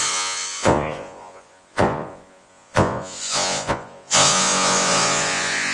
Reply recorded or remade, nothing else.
remade